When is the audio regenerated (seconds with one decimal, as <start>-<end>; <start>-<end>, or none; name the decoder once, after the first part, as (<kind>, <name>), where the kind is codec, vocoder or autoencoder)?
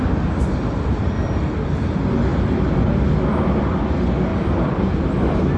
none